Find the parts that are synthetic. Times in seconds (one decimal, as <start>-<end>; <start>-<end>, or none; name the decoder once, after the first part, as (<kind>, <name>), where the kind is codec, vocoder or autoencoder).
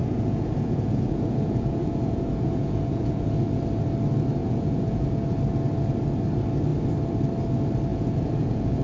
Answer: 0.0-3.6 (vocoder, Vocos); 4.4-5.4; 7.9-8.8